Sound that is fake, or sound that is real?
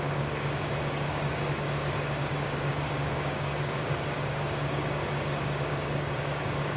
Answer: fake